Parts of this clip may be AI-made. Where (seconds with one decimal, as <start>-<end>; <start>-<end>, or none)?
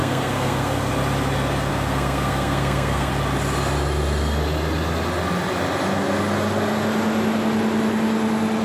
0.0-0.9; 1.7-3.1